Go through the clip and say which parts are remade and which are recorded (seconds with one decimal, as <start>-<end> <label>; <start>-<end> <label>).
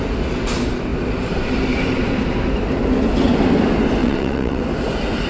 0.0-4.0 recorded; 4.0-4.6 remade; 4.6-5.3 recorded